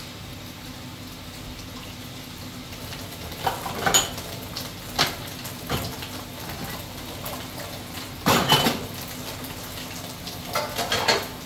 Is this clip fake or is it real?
real